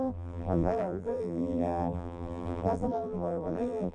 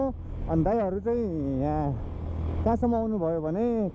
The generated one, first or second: first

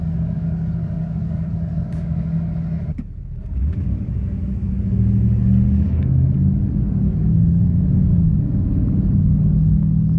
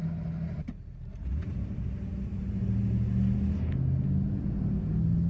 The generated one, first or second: first